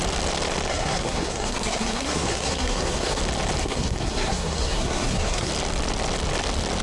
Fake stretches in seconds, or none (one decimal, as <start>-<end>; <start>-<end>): 0.7-3.2; 3.6-5.5